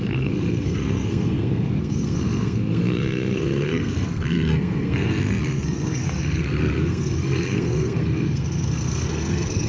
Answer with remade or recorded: remade